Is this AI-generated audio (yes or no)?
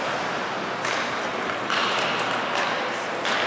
no